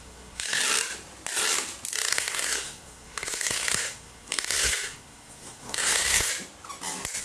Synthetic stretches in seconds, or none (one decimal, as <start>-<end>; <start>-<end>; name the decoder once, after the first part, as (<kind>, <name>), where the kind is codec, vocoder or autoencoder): 0.0-0.6 (codec, SNAC); 2.1-6.3